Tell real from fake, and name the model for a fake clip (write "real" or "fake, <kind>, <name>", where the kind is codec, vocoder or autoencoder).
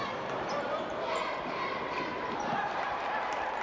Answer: fake, vocoder, BigVGAN v2